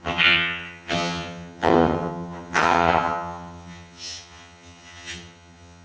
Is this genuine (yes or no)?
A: no